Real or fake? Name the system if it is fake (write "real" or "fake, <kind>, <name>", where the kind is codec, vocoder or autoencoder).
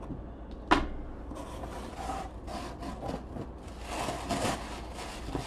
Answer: real